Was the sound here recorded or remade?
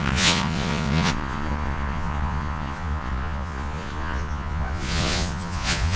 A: remade